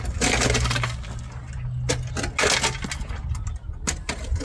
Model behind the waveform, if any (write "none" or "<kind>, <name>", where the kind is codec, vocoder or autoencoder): none